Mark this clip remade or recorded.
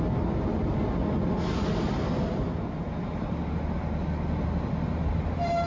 recorded